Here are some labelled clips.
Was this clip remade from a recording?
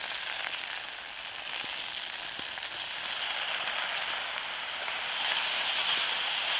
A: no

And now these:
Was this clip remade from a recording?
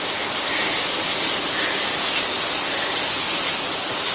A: no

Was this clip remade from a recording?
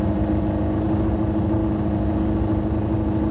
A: no